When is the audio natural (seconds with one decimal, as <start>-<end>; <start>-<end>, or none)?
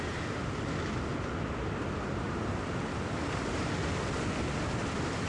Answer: 0.0-5.3